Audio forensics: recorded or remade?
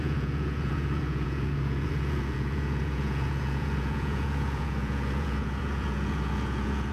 remade